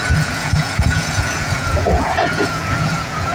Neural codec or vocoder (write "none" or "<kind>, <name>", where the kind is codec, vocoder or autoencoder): vocoder, Vocos